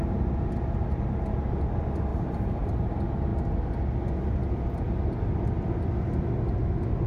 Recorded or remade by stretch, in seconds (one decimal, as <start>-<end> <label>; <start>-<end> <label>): 0.0-2.1 recorded; 2.1-2.9 remade; 2.9-7.1 recorded